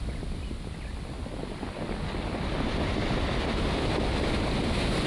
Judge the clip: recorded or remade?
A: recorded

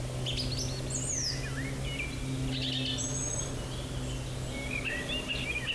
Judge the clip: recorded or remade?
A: recorded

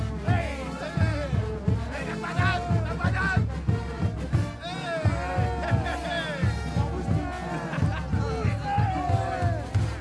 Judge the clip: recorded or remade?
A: recorded